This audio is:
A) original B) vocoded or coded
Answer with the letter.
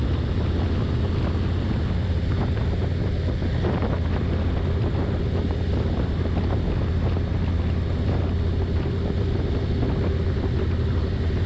A